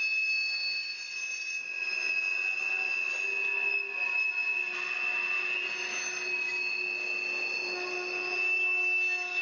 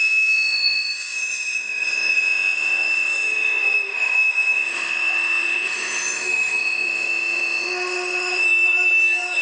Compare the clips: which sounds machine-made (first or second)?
second